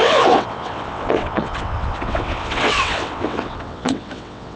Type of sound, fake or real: fake